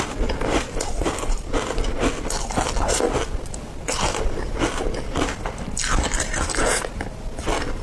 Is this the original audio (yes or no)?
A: yes